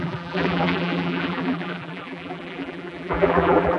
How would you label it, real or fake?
fake